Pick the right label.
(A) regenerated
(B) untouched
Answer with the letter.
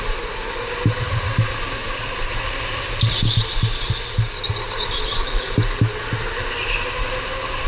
B